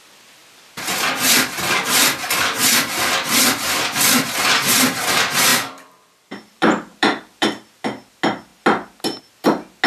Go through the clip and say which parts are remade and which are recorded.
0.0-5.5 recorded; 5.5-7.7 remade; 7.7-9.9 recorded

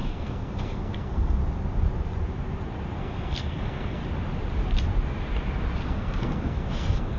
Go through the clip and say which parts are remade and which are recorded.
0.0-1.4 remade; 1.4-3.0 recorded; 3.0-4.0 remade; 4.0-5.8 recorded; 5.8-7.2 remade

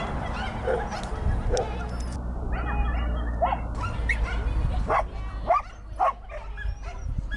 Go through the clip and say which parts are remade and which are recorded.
0.0-7.4 recorded

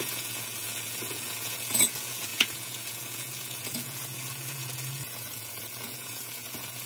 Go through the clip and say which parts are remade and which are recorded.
0.0-6.9 remade

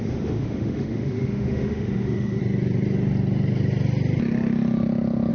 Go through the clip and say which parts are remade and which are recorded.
0.0-2.4 remade; 2.4-5.3 recorded

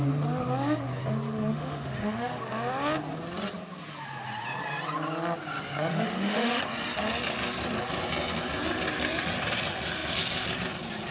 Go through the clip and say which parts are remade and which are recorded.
0.0-1.5 recorded; 1.5-2.4 remade; 2.4-5.9 recorded; 5.9-6.6 remade; 6.6-11.1 recorded